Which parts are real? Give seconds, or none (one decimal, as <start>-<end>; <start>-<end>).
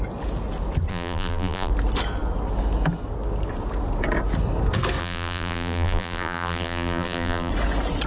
0.0-0.9; 1.7-5.0; 7.5-8.1